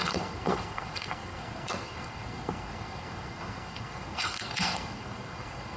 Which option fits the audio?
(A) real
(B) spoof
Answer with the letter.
B